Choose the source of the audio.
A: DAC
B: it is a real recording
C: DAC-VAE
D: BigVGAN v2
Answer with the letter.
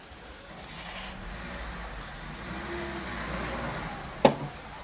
B